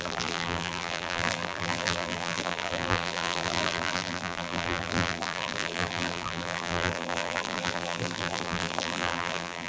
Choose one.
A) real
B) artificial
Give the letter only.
B